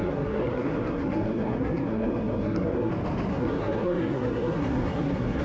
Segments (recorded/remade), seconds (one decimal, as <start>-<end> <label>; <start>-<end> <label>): 0.0-2.9 remade; 2.9-3.3 recorded; 3.3-5.4 remade